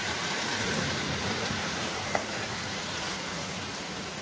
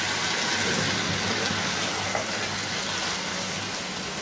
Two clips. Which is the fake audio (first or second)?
first